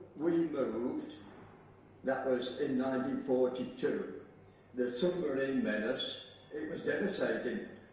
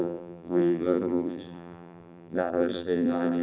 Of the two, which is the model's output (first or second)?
second